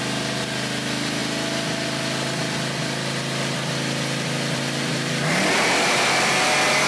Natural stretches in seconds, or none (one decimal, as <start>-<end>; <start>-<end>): 0.0-6.9